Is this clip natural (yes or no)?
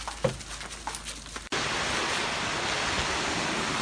yes